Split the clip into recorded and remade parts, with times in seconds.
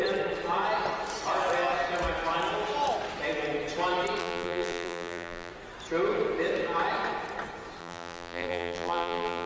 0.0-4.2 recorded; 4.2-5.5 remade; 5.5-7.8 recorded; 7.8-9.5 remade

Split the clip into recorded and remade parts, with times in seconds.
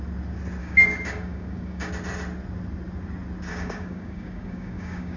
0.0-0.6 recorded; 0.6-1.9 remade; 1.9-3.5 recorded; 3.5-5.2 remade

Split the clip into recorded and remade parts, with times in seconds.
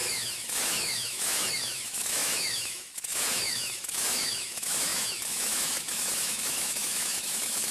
0.0-7.7 remade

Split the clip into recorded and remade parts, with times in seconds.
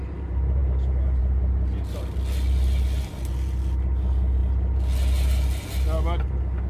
0.0-6.7 recorded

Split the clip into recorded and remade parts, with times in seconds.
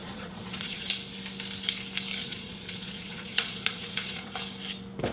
0.0-0.9 remade; 0.9-2.2 recorded; 2.2-4.3 remade; 4.3-5.1 recorded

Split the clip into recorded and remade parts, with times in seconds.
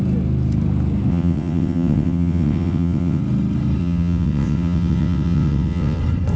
0.0-1.1 recorded; 1.1-3.2 remade; 3.2-3.8 recorded; 3.8-6.0 remade; 6.0-6.4 recorded